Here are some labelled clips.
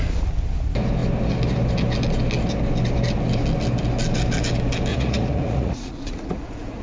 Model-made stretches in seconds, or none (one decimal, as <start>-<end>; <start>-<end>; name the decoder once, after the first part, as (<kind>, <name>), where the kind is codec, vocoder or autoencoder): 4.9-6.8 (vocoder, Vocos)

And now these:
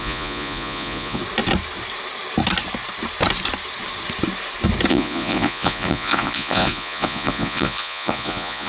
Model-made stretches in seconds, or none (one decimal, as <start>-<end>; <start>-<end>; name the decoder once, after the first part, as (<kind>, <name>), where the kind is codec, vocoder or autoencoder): 0.0-1.2 (vocoder, Vocos); 4.9-8.7

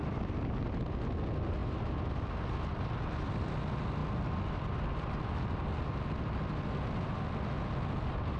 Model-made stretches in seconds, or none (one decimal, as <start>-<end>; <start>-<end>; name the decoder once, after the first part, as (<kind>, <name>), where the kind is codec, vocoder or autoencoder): none